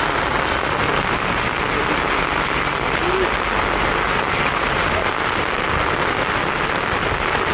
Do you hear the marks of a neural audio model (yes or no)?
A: no